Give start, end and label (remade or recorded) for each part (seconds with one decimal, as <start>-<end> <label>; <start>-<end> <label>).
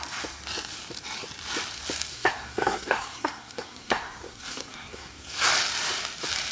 0.0-2.1 recorded; 2.1-5.5 remade; 5.5-6.5 recorded